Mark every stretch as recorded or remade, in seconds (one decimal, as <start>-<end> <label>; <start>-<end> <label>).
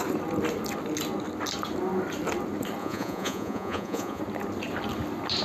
0.0-2.8 recorded; 2.8-4.2 remade; 4.2-5.4 recorded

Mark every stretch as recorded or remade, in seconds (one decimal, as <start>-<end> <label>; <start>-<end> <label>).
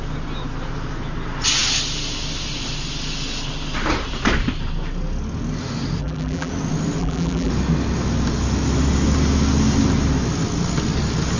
0.0-6.0 recorded; 6.0-6.5 remade; 6.5-7.0 recorded; 7.0-7.5 remade; 7.5-11.4 recorded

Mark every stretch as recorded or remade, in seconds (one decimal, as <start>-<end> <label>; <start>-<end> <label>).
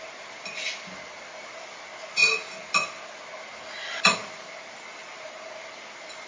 0.0-6.3 recorded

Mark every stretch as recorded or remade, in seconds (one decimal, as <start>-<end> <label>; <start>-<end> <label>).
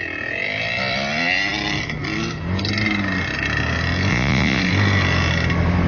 0.0-4.1 recorded; 4.1-4.6 remade; 4.6-5.9 recorded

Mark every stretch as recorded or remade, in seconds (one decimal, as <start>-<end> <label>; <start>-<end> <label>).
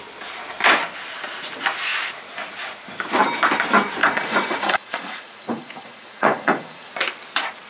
0.0-4.0 recorded; 4.0-6.9 remade; 6.9-7.7 recorded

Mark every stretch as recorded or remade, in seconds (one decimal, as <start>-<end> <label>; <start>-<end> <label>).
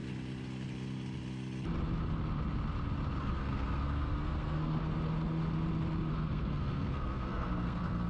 0.0-3.2 recorded; 3.2-4.8 remade; 4.8-6.1 recorded; 6.1-8.1 remade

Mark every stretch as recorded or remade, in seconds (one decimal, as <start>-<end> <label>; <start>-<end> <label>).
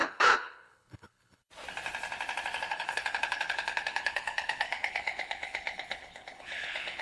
0.0-1.5 remade; 1.5-2.7 recorded; 2.7-7.0 remade